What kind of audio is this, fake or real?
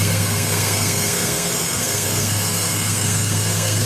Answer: fake